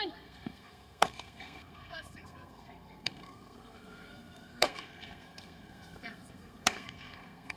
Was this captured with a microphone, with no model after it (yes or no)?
no